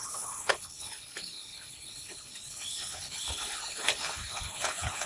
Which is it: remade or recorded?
remade